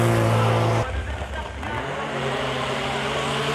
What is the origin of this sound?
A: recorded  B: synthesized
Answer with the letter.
A